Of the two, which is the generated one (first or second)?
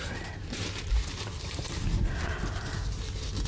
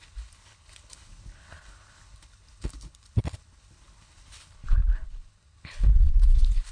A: second